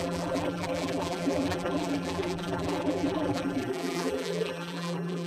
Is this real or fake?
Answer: fake